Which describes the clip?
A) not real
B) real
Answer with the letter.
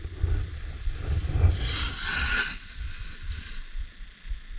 B